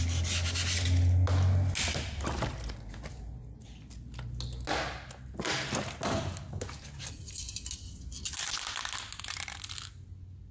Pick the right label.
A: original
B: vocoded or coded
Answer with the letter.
A